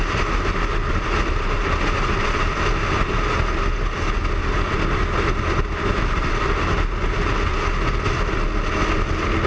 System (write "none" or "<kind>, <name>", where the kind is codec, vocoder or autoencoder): none